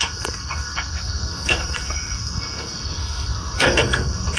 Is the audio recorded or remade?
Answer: remade